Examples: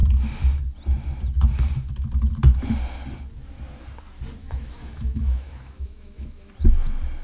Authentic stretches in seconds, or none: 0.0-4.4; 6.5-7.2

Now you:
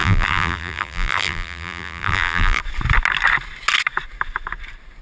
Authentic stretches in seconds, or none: 2.6-5.0

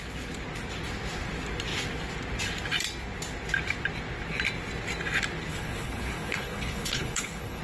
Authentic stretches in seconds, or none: 0.0-5.5